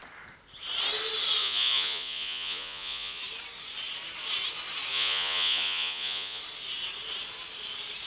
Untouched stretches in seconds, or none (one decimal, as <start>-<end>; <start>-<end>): 0.0-1.4; 3.2-4.9; 6.4-8.1